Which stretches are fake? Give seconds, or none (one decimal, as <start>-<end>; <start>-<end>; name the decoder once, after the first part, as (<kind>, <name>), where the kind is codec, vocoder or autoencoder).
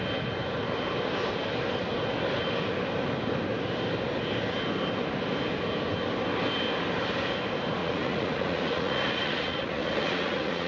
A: 7.8-10.7 (vocoder, Vocos)